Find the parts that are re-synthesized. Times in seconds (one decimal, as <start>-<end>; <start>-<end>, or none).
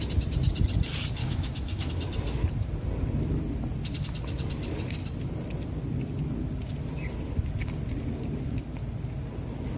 1.2-1.9